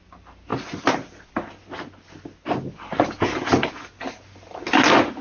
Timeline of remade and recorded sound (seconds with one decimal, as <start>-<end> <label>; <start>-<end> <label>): 0.0-5.2 recorded